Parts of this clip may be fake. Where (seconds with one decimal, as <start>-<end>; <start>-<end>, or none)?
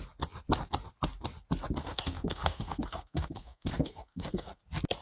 1.8-4.6